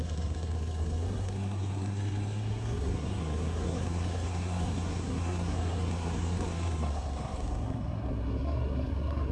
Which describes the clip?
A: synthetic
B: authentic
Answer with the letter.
A